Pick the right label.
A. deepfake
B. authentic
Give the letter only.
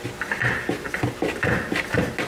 B